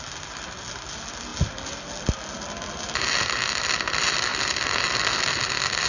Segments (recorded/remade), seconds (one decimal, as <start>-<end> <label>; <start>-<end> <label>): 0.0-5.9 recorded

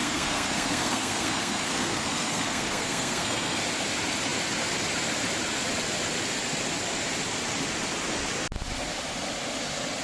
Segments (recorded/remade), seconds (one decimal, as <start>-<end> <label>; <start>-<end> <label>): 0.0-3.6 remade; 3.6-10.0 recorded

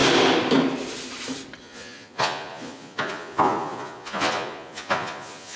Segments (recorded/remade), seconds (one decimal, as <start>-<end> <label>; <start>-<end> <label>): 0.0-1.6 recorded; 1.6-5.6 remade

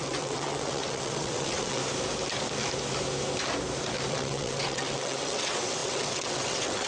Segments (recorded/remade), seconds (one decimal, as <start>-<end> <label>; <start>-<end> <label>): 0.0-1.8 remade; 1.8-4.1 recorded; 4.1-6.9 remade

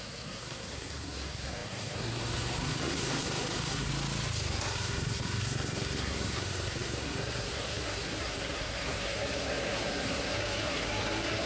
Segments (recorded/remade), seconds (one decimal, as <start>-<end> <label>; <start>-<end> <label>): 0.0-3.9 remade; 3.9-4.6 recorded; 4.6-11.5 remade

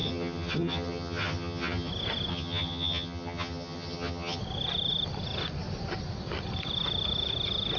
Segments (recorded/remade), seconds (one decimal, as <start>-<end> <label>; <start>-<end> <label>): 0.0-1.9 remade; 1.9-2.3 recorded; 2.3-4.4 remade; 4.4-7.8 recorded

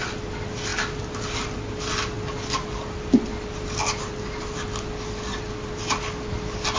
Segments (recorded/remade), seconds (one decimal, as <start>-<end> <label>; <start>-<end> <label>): 0.0-6.8 recorded

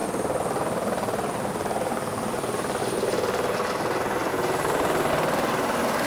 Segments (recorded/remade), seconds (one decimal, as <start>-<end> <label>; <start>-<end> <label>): 0.0-2.8 remade; 2.8-4.3 recorded; 4.3-5.1 remade; 5.1-6.1 recorded